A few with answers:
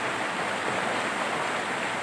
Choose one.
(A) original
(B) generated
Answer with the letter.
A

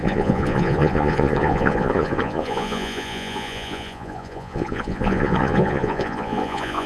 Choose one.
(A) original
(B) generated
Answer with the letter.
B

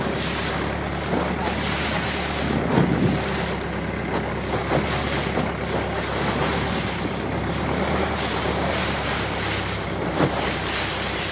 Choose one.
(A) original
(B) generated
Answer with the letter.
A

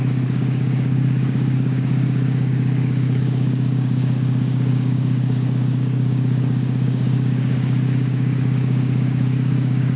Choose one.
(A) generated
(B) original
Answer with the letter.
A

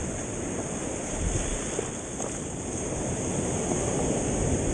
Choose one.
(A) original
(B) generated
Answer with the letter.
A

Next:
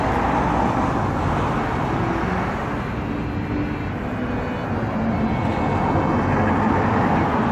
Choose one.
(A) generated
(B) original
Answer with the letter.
B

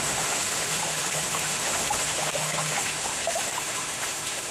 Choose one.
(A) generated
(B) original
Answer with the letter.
A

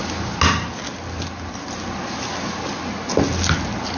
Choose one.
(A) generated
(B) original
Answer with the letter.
B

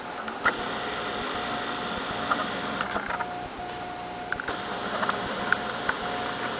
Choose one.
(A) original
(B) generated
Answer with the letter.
A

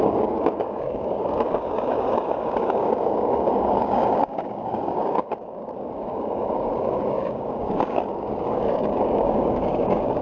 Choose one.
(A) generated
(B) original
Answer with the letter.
A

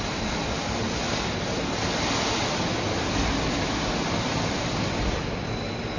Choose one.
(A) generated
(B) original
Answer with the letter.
B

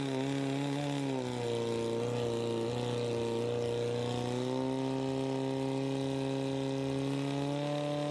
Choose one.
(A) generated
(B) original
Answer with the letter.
B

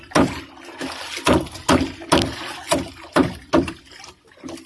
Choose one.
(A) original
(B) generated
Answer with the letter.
A